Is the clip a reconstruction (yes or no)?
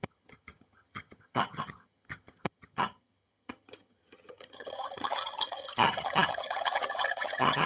yes